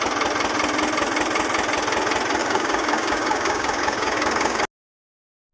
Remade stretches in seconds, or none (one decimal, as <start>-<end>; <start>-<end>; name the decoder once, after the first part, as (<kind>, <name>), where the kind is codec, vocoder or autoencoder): 2.4-4.6 (codec, DAC)